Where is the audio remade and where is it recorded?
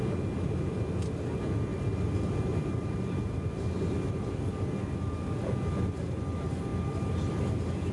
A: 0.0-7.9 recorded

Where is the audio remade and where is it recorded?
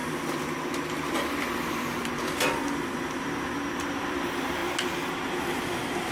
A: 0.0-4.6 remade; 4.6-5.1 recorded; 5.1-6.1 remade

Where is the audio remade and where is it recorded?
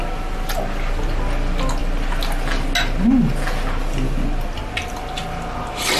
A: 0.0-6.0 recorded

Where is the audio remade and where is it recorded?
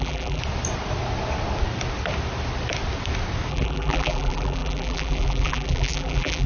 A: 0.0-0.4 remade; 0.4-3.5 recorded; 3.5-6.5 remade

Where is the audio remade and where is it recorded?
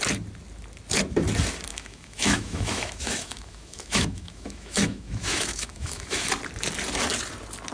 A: 0.0-1.7 recorded; 1.7-6.3 remade; 6.3-7.7 recorded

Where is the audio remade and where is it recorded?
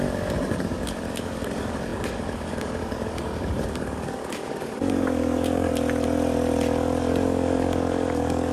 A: 0.0-5.7 remade; 5.7-7.0 recorded; 7.0-8.5 remade